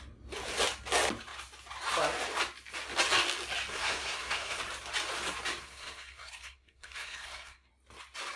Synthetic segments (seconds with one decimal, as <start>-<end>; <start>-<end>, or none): 3.7-4.6; 5.6-7.7